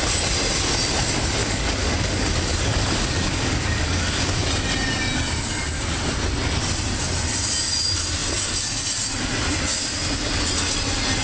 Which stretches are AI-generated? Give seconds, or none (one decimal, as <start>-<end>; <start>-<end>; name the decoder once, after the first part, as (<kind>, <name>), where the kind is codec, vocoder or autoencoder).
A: 1.4-4.5 (codec, DAC)